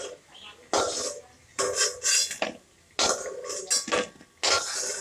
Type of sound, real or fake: real